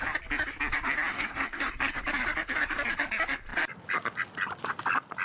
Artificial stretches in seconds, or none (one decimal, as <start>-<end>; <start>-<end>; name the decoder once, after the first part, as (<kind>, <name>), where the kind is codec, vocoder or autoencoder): 1.1-2.0 (codec, SNAC)